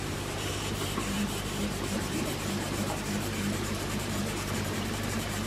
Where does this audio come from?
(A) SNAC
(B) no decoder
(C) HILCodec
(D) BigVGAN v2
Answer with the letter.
D